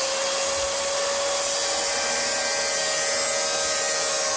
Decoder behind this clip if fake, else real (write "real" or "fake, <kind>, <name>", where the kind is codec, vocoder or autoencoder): real